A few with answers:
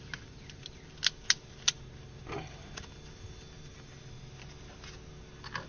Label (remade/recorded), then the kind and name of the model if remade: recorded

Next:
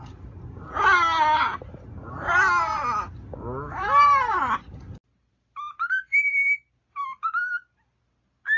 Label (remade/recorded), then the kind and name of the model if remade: recorded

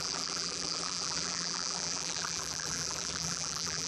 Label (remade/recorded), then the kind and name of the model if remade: remade, vocoder, BigVGAN v2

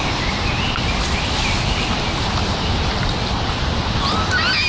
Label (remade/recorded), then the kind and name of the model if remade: recorded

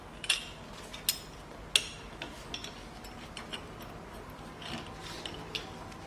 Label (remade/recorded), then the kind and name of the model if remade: recorded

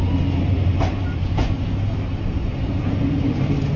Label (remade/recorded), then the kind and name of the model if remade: recorded